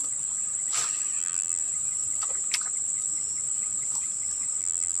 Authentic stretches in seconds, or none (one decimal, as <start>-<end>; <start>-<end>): 0.0-1.2; 1.6-4.6